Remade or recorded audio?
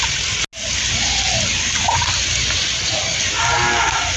recorded